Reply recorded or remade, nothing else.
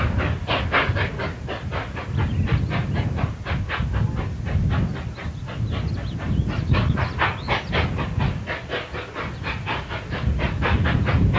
recorded